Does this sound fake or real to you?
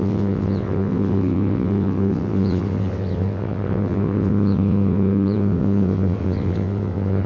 fake